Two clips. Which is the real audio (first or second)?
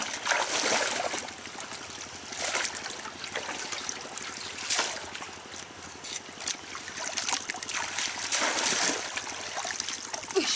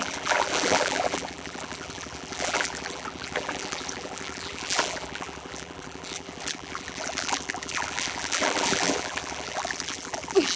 first